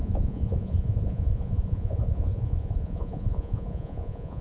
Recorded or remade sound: remade